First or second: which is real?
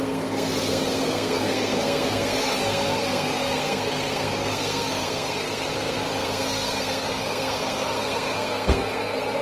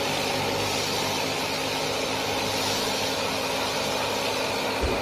second